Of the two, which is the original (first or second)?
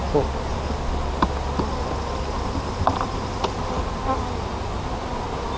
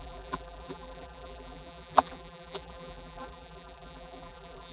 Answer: first